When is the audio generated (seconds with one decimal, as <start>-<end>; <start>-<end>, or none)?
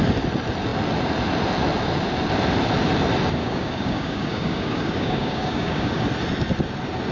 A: 3.4-6.0